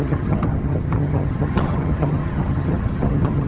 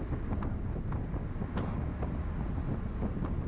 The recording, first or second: second